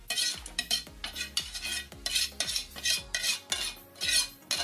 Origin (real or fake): real